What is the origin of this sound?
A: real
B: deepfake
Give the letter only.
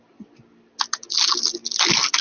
A